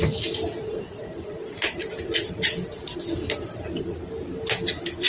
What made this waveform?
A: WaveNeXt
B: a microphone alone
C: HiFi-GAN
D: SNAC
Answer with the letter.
B